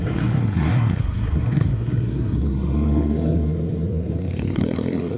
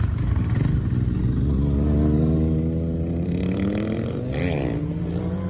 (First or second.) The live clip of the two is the second